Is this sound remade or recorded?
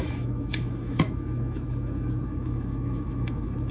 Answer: remade